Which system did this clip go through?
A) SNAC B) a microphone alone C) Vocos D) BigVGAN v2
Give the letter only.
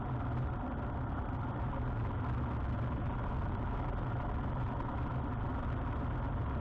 B